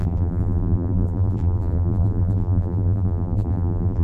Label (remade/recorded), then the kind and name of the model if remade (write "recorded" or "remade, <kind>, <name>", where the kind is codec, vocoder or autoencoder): remade, vocoder, BigVGAN v2